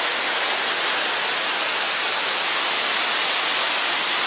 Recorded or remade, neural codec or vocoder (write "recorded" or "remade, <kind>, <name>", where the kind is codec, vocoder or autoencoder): recorded